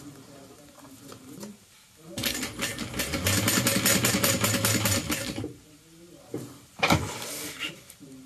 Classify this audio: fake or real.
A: real